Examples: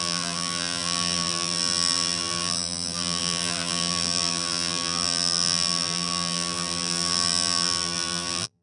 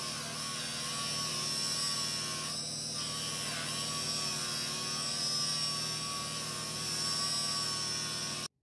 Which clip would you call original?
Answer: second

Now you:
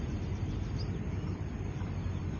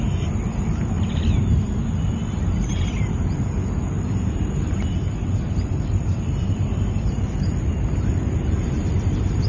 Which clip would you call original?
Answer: first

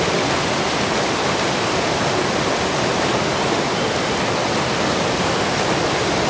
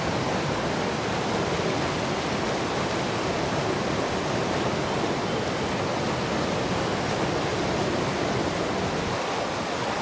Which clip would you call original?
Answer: second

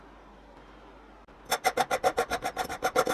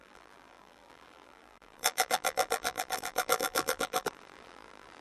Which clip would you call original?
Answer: first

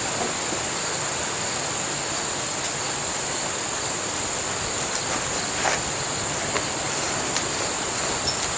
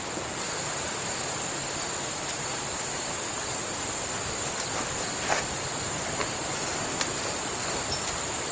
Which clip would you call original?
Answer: first